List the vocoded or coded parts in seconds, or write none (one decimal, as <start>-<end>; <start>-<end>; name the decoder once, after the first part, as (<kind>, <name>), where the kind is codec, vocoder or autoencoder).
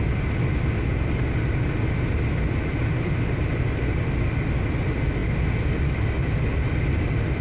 none